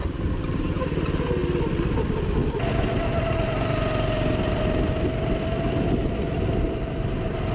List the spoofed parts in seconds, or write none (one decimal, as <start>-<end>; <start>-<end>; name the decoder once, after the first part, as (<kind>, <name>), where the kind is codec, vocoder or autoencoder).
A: none